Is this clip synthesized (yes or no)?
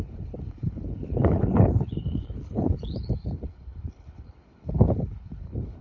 yes